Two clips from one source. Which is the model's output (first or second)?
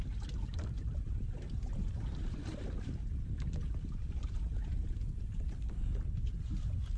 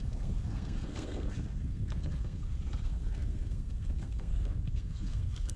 second